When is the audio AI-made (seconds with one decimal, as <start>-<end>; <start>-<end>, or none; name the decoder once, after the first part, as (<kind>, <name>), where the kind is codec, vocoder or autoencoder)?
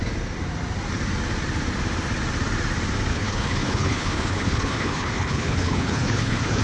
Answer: 3.1-6.6 (codec, HILCodec)